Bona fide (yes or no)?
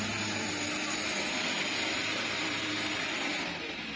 yes